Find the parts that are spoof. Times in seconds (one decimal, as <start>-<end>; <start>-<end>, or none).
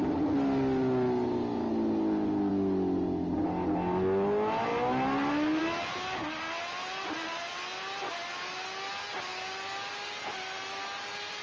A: none